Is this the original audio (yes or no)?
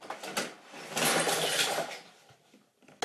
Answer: yes